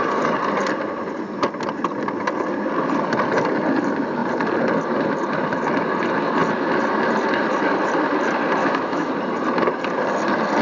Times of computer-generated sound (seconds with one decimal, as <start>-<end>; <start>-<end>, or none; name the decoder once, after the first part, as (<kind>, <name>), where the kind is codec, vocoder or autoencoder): 8.6-9.1 (autoencoder, DAC-VAE)

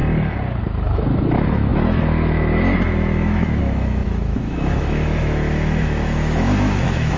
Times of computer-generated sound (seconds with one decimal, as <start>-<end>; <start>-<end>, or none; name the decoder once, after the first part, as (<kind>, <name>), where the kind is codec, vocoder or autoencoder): 0.6-7.2 (autoencoder, DAC-VAE)

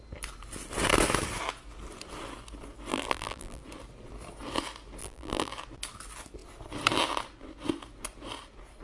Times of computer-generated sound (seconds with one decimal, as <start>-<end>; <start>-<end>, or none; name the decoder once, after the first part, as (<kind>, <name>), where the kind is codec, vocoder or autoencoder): 2.9-3.6 (vocoder, BigVGAN v2); 5.0-5.5

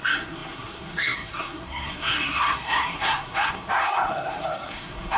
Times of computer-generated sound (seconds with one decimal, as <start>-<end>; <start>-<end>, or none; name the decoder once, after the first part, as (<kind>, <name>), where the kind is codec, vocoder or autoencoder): 0.0-5.2 (codec, SNAC)

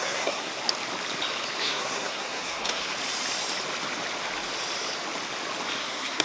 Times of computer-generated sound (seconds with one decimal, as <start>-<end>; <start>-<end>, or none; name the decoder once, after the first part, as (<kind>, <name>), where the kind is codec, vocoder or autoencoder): 0.0-0.5 (codec, SNAC); 1.6-2.9; 5.8-6.2

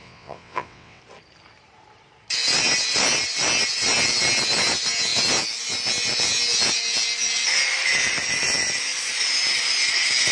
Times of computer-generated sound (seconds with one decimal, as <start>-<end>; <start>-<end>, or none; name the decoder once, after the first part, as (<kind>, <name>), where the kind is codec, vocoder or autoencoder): 0.0-1.0 (vocoder, WaveNeXt)

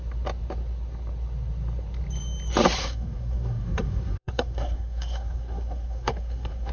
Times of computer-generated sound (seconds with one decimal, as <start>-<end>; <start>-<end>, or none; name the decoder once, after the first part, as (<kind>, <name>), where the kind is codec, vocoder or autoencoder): 2.8-6.7 (codec, SNAC)

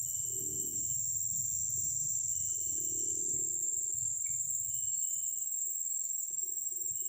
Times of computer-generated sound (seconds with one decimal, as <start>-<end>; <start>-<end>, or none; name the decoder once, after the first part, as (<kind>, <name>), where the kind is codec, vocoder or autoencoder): none